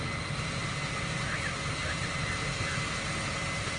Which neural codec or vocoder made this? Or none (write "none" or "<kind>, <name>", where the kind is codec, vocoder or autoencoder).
none